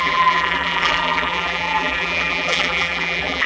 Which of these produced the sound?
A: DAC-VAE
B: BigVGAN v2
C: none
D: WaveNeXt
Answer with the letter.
B